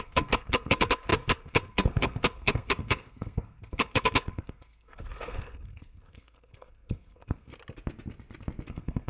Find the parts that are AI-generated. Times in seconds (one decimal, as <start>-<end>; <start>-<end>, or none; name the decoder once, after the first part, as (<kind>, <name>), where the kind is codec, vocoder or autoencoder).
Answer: 0.0-7.5 (codec, SNAC); 8.7-9.1